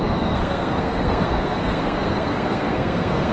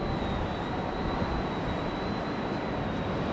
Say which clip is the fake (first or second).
first